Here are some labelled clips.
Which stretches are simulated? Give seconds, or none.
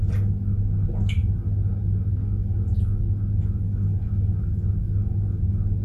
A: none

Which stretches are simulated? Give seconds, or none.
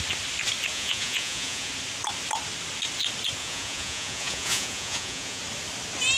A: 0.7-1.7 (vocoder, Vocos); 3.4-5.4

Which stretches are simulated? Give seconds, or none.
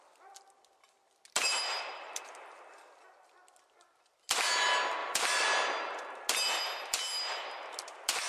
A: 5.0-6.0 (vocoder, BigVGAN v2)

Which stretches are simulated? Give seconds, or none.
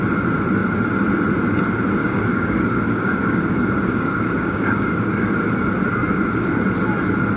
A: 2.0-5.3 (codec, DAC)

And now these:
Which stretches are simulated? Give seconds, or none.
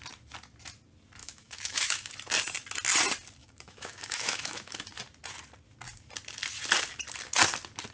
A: 1.2-2.1 (autoencoder, DAC-VAE); 3.4-4.8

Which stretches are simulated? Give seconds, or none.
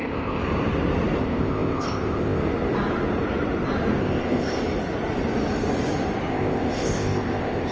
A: 0.0-0.4 (codec, ZipCodec); 1.2-2.4; 4.0-4.6; 6.3-7.7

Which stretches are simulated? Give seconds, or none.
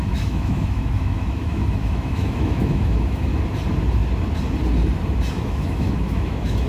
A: 0.0-3.3 (autoencoder, DAC-VAE); 5.3-6.7